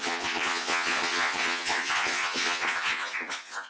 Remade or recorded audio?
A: remade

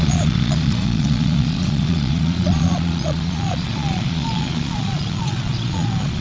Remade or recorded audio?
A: remade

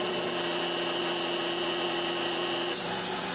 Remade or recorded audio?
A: remade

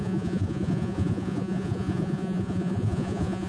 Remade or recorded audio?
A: remade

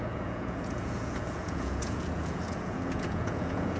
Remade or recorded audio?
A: remade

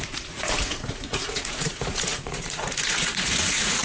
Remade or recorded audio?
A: remade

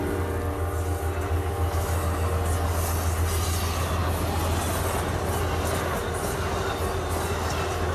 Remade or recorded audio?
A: recorded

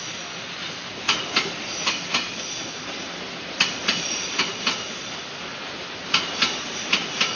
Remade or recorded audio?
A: recorded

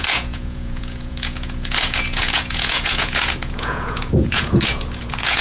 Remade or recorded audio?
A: remade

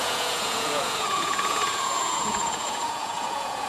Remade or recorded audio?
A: remade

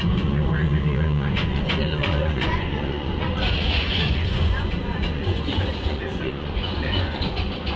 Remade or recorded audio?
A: remade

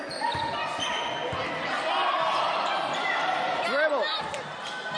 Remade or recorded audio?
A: recorded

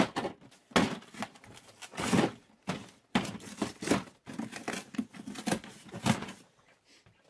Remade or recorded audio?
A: recorded